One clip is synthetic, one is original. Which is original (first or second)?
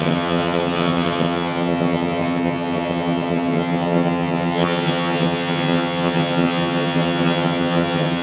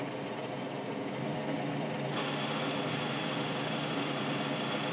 second